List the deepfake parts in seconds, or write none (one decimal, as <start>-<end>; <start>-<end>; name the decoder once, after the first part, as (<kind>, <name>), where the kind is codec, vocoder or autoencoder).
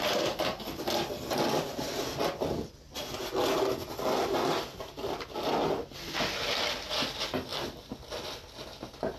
7.5-8.1 (vocoder, BigVGAN v2)